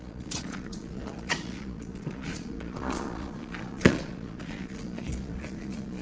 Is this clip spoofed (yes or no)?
yes